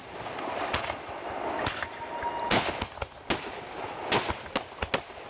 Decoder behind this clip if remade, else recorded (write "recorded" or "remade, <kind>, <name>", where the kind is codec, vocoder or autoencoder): recorded